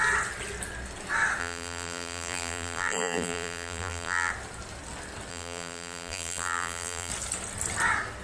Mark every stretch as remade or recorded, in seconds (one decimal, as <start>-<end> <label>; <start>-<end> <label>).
0.0-1.4 recorded; 1.4-4.3 remade; 4.3-5.3 recorded; 5.3-7.1 remade; 7.1-8.2 recorded